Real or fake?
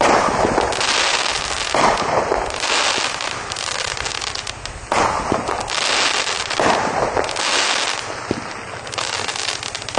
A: real